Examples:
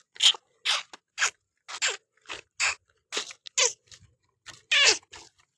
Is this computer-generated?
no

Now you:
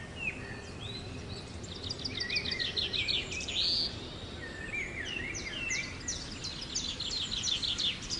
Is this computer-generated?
no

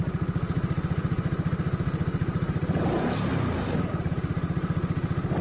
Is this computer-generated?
no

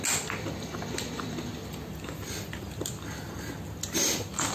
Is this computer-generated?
no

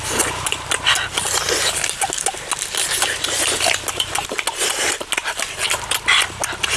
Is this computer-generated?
no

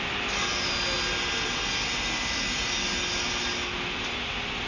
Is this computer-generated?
no